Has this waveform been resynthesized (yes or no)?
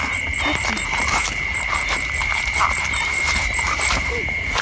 yes